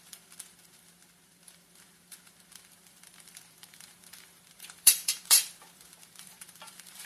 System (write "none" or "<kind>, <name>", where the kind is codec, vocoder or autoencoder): vocoder, BigVGAN v2